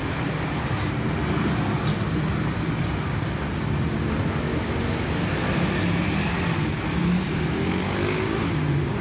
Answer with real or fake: real